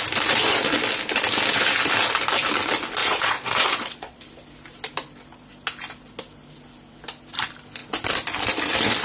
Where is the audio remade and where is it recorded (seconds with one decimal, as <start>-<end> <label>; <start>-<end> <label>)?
0.0-3.0 recorded; 3.0-4.2 remade; 4.2-9.0 recorded